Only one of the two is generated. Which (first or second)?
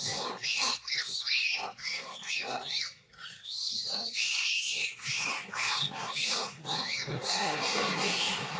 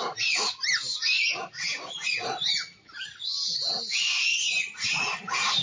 first